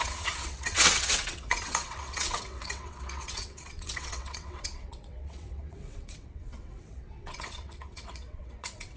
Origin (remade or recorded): remade